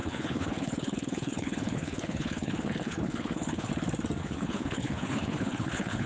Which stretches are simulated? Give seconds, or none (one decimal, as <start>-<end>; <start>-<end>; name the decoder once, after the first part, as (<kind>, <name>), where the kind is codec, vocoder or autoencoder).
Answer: 0.0-3.7 (codec, HILCodec); 4.2-6.1